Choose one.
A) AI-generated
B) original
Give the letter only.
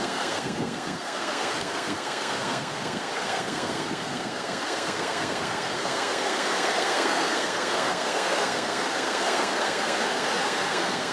A